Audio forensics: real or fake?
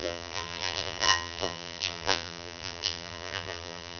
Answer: fake